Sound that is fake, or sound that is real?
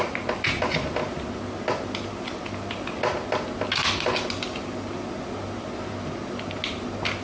real